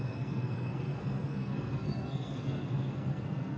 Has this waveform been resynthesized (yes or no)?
yes